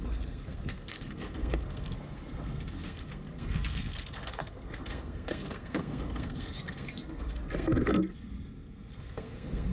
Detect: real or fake fake